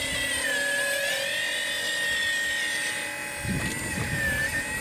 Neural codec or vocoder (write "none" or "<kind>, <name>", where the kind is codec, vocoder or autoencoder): none